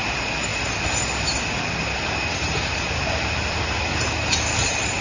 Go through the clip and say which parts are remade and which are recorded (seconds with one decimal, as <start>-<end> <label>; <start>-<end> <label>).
0.0-5.0 recorded